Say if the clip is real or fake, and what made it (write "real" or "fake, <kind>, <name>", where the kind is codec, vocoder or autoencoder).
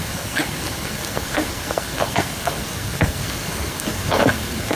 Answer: fake, codec, SNAC